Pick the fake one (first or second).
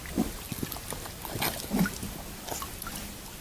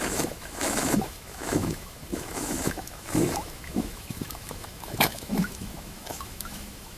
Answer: second